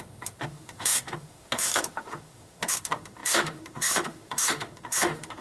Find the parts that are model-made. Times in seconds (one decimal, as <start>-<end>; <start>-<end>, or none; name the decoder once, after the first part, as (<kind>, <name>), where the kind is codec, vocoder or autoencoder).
0.0-5.4 (autoencoder, DAC-VAE)